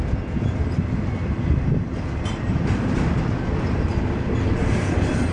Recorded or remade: recorded